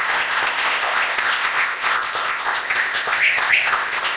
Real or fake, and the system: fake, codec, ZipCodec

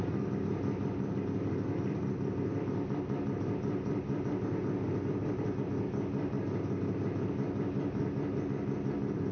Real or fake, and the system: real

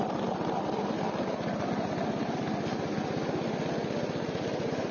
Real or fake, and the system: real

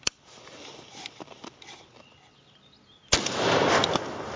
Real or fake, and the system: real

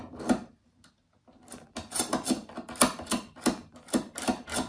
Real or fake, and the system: real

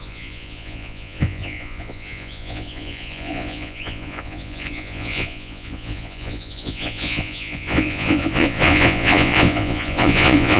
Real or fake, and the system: fake, vocoder, Vocos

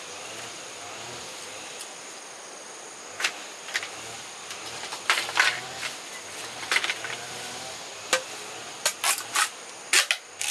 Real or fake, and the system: real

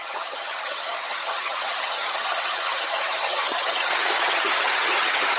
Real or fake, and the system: fake, vocoder, HiFi-GAN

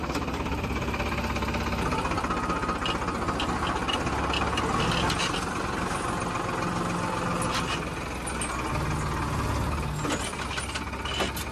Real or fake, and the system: real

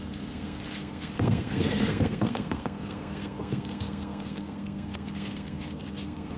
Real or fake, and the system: fake, codec, SNAC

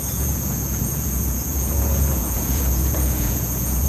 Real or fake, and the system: fake, vocoder, Vocos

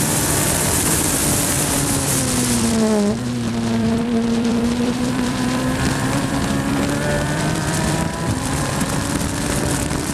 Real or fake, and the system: fake, vocoder, BigVGAN v2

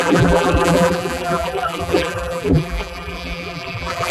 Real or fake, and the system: fake, vocoder, BigVGAN v2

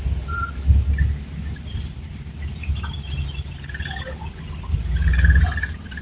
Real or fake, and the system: real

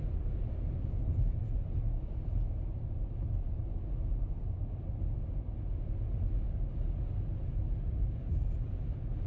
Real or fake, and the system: real